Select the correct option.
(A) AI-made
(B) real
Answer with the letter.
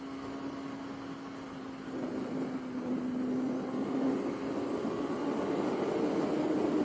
B